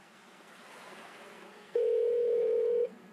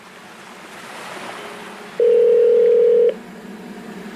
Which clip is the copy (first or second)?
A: first